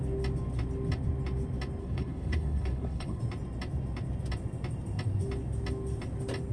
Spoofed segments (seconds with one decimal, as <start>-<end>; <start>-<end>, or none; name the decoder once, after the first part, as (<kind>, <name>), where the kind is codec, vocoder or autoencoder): 1.8-3.2 (codec, HILCodec)

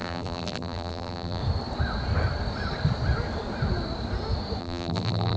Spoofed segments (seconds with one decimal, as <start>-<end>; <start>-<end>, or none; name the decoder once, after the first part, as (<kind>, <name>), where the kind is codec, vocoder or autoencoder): 0.0-1.4 (vocoder, BigVGAN v2); 4.6-5.4